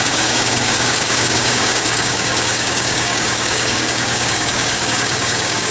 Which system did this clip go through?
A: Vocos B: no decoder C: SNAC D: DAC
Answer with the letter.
D